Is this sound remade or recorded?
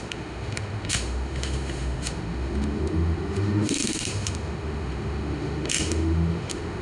remade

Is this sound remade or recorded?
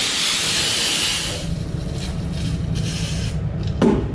recorded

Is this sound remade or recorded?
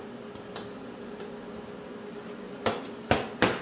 recorded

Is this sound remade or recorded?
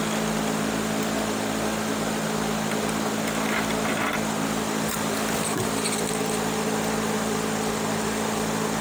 recorded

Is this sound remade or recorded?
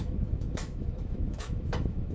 remade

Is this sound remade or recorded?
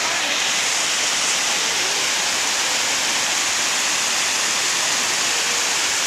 recorded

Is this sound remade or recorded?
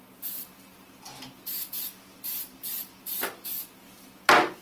recorded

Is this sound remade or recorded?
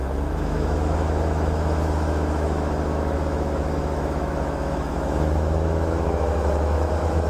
remade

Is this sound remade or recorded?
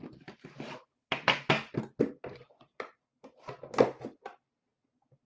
recorded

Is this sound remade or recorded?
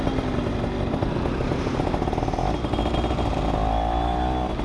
recorded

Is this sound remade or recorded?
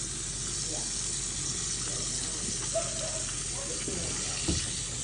recorded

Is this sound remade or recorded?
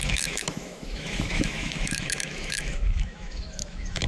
remade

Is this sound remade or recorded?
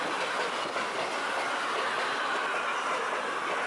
recorded